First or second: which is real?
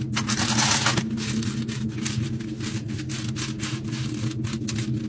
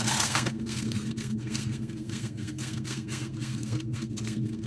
first